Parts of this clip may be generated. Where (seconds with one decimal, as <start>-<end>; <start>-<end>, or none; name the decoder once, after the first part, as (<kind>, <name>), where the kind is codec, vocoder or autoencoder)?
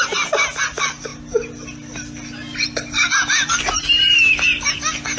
none